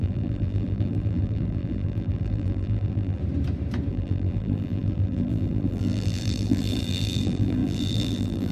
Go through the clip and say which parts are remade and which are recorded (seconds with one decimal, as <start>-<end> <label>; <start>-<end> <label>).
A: 0.0-3.2 remade; 3.2-3.9 recorded; 3.9-8.5 remade